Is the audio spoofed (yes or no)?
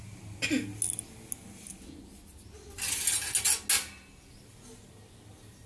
no